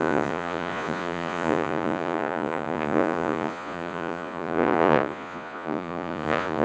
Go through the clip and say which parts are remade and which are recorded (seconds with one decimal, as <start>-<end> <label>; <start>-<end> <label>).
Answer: 0.0-6.6 remade